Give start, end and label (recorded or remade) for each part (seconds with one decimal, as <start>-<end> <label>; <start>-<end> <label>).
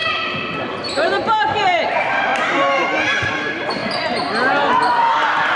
0.0-0.8 recorded; 0.8-2.3 remade; 2.3-3.1 recorded; 3.1-3.8 remade; 3.8-4.9 recorded; 4.9-5.6 remade